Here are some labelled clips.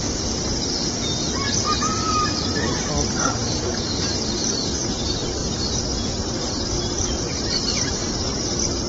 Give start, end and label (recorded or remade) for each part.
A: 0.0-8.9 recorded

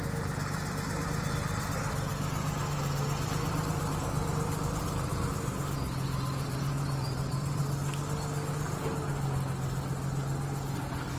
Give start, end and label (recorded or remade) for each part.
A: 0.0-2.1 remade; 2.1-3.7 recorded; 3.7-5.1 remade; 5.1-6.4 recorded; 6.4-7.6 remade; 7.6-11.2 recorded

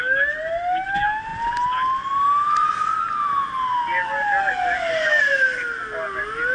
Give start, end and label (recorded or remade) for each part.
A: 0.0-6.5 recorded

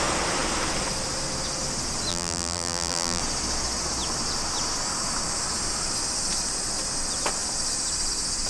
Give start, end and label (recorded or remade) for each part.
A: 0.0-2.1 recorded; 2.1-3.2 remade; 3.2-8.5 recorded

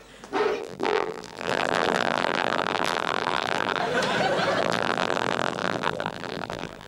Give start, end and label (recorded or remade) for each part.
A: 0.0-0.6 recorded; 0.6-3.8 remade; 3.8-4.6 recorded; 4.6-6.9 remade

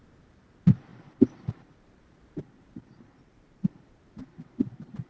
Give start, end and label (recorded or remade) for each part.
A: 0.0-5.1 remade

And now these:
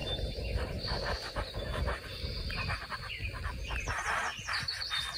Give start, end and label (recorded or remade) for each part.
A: 0.0-3.1 remade; 3.1-5.2 recorded

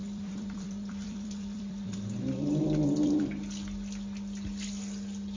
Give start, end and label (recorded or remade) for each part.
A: 0.0-3.2 remade; 3.2-5.4 recorded